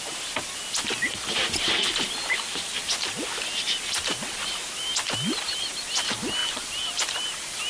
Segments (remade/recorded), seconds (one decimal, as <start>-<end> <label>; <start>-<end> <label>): 0.0-7.7 recorded